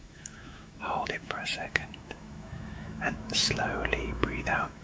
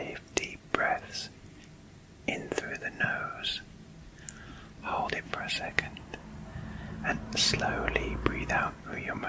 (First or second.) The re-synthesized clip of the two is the first